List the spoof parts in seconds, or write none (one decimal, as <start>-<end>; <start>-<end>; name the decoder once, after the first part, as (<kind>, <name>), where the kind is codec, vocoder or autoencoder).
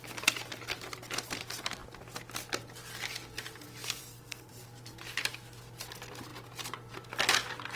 4.0-4.5 (codec, SNAC)